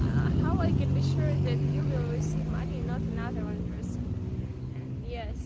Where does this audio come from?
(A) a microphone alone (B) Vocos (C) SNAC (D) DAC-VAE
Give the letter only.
A